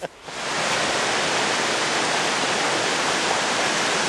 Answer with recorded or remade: recorded